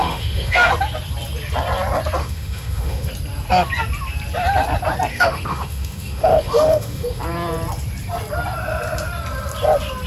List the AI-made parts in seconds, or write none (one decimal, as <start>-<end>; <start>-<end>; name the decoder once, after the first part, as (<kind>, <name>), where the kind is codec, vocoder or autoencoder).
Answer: 0.0-0.7 (autoencoder, DAC-VAE); 2.2-3.1; 5.1-7.2